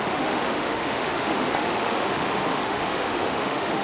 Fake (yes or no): yes